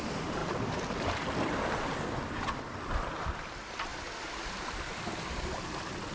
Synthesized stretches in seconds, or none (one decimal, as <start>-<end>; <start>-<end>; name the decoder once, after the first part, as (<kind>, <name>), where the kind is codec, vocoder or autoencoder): 0.4-2.5 (vocoder, BigVGAN v2)